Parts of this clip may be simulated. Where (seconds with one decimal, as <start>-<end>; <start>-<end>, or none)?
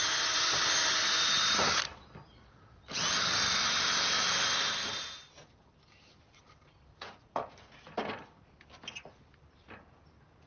6.9-7.7